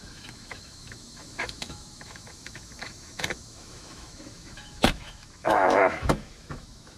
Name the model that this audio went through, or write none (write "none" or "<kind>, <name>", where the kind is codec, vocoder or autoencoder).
autoencoder, DAC-VAE